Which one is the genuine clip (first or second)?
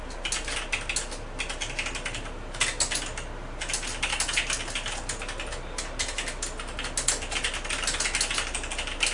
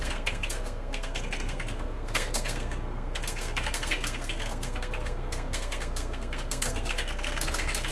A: first